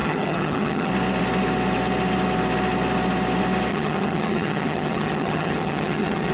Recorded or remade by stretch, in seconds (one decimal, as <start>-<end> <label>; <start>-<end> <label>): 0.0-0.9 remade; 0.9-3.7 recorded; 3.7-6.3 remade